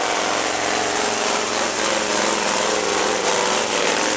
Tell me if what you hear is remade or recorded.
recorded